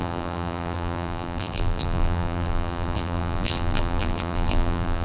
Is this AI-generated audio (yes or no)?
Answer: yes